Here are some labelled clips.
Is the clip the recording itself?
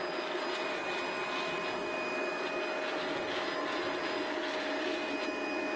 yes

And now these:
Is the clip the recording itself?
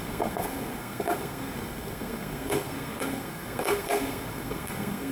no